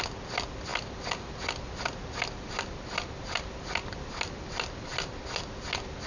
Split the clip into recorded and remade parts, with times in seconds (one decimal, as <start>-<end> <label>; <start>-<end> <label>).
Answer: 0.0-6.1 recorded